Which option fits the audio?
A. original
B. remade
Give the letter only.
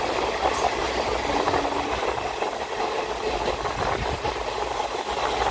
A